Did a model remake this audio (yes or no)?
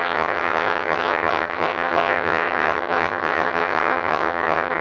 yes